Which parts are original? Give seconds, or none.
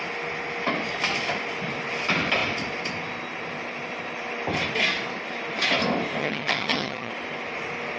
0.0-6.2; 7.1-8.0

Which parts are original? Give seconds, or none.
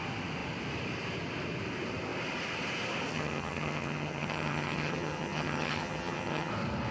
0.0-3.1; 6.5-6.9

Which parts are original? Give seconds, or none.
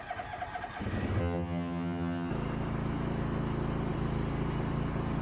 0.0-1.2; 2.3-5.2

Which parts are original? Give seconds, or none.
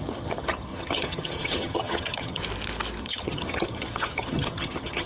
2.4-3.0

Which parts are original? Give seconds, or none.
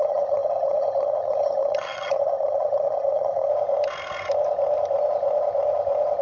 3.5-6.2